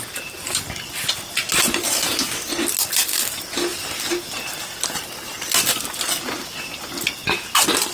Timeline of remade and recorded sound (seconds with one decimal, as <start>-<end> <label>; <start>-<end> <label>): 0.0-7.9 recorded